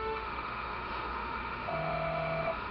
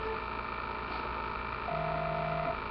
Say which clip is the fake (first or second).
first